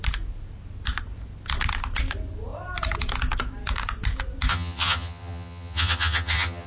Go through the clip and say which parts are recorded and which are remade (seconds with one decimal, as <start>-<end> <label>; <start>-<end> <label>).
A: 0.0-4.5 recorded; 4.5-6.7 remade